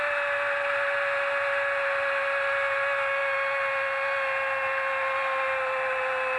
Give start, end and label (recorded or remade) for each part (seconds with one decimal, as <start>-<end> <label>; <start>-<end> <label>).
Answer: 0.0-6.4 recorded